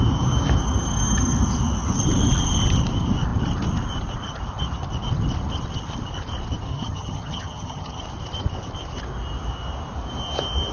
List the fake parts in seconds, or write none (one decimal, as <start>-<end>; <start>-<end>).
6.7-8.0